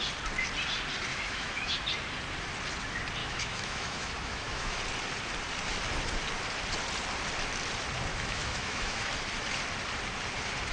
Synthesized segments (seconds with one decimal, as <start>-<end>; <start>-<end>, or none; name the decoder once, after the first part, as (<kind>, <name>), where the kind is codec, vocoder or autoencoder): 1.1-1.7 (autoencoder, DAC-VAE); 3.2-4.8; 8.1-9.1